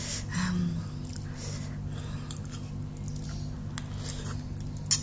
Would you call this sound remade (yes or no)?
no